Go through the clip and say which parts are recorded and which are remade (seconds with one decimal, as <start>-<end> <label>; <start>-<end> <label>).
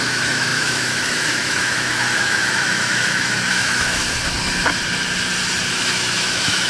0.0-4.0 remade; 4.0-5.7 recorded; 5.7-6.7 remade